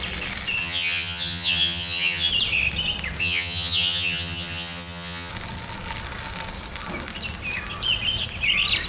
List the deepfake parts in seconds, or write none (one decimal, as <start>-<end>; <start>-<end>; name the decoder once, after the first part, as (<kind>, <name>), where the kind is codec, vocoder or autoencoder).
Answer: 0.6-2.3 (vocoder, HiFi-GAN); 3.2-5.3